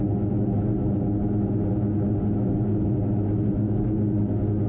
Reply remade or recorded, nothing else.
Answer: recorded